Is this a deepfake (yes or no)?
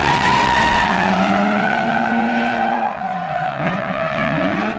yes